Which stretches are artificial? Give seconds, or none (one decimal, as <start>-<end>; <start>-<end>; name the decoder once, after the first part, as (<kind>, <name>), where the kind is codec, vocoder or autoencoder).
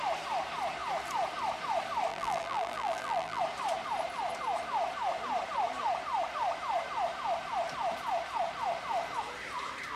2.1-3.4 (vocoder, BigVGAN v2)